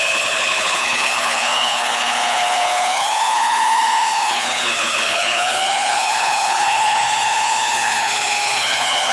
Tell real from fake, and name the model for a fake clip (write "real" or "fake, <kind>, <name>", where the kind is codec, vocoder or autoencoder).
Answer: fake, codec, HILCodec